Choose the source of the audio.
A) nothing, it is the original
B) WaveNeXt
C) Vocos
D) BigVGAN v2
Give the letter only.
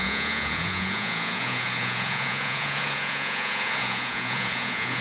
C